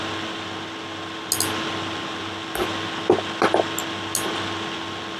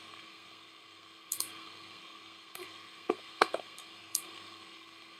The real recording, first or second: first